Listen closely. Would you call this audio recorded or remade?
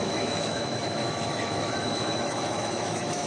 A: remade